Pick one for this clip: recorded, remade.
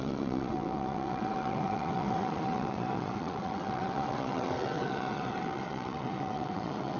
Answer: remade